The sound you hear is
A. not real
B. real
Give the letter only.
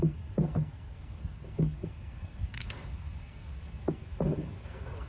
A